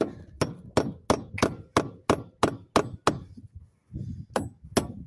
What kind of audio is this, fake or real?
real